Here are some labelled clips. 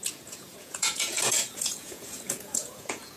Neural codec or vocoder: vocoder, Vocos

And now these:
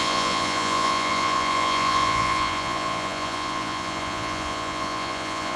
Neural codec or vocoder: vocoder, Vocos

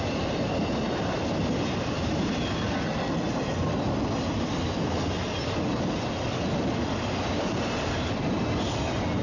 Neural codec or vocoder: none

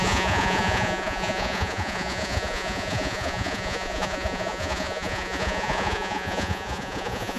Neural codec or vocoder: vocoder, Vocos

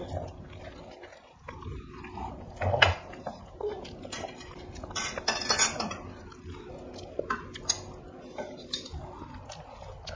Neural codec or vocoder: none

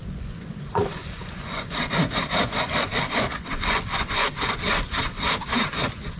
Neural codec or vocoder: vocoder, Vocos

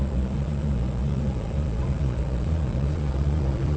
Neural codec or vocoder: vocoder, Vocos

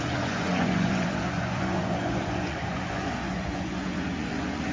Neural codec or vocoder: vocoder, Vocos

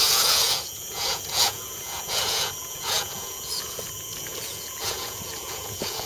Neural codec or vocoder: vocoder, Vocos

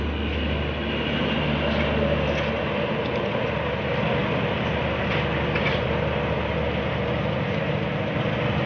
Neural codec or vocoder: none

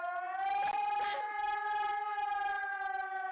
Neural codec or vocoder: none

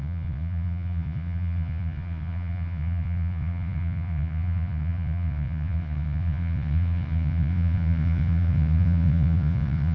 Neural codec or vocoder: vocoder, Vocos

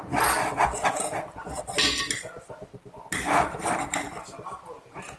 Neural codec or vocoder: none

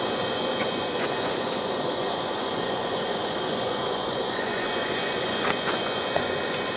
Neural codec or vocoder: vocoder, Vocos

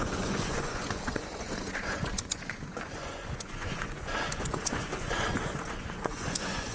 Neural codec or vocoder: vocoder, Vocos